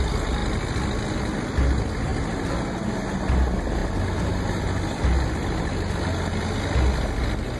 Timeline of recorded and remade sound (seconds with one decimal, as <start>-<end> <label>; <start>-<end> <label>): 0.0-7.6 recorded